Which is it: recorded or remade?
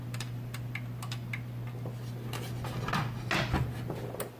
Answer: recorded